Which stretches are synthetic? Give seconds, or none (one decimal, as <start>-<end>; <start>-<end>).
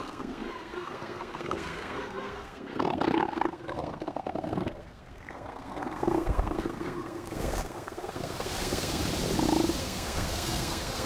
0.0-9.0; 9.8-11.1